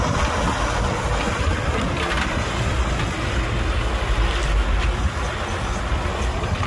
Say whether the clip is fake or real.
real